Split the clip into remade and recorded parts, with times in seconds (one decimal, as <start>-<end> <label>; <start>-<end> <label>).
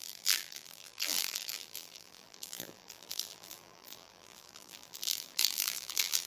0.0-6.3 remade